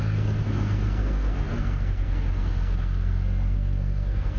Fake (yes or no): yes